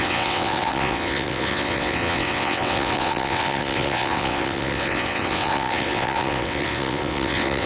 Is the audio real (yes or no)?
no